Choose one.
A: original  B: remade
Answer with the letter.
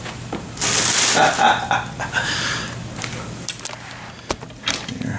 A